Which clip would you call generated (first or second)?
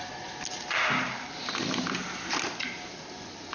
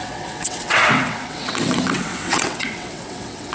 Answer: second